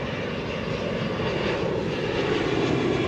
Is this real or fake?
real